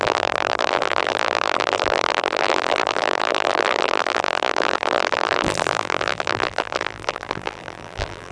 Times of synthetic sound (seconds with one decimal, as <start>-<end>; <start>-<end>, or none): 0.0-8.3